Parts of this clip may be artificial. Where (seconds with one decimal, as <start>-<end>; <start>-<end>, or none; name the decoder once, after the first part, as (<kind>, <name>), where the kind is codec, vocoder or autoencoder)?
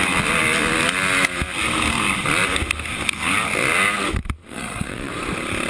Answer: 4.4-5.1 (vocoder, WaveNeXt)